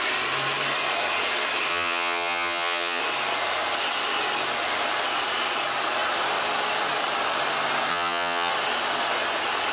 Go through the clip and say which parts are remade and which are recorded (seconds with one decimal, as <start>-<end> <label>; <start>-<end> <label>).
0.0-1.7 recorded; 1.7-3.0 remade; 3.0-7.9 recorded; 7.9-8.5 remade; 8.5-9.7 recorded